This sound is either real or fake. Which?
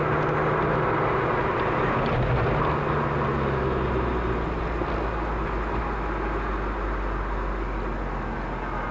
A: real